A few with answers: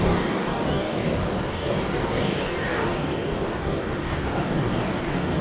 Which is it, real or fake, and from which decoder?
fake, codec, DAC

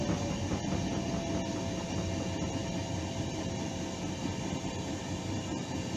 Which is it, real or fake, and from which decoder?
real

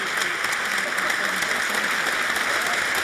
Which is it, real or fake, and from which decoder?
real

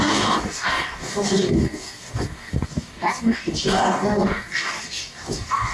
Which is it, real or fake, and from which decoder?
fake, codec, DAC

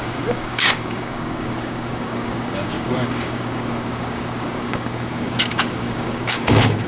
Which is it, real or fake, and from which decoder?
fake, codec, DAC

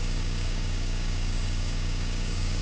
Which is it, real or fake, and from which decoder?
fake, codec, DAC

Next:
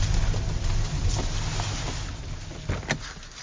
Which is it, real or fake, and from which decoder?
real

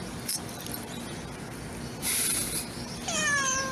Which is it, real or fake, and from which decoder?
real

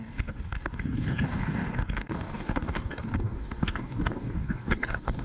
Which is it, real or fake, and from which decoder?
fake, codec, DAC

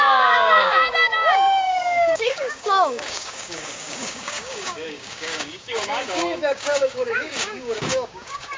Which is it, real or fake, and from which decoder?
fake, codec, DAC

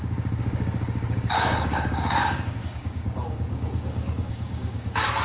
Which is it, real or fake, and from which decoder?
fake, codec, DAC